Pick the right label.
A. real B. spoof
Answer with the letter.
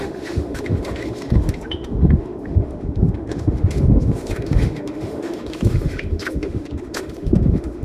B